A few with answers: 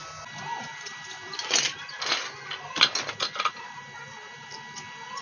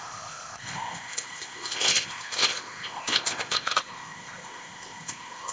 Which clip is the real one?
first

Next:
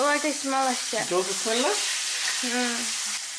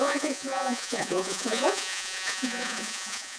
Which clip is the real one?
first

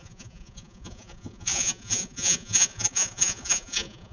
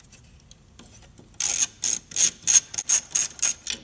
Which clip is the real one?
second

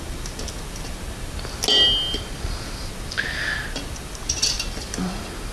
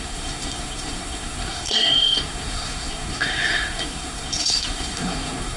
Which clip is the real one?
first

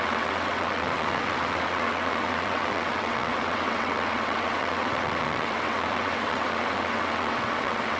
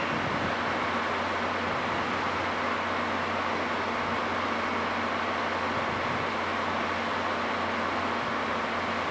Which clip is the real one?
second